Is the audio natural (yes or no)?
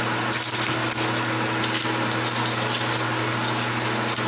yes